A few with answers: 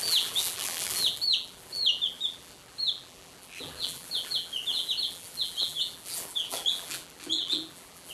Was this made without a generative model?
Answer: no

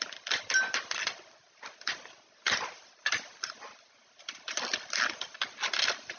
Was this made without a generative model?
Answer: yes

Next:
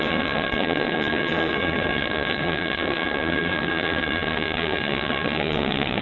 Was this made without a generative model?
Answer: no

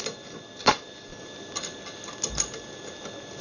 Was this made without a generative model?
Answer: yes